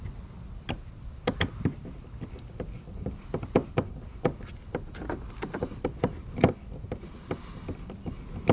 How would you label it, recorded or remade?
recorded